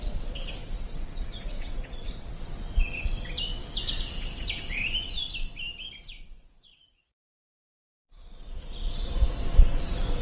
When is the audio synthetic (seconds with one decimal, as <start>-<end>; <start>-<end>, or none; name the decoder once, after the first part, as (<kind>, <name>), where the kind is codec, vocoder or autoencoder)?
0.6-2.4 (vocoder, Vocos); 6.1-8.9